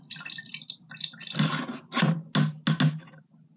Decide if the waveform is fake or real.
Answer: real